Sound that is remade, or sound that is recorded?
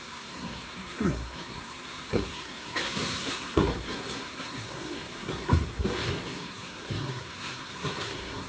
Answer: remade